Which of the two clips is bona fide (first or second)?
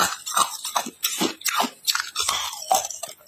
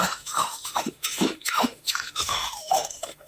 first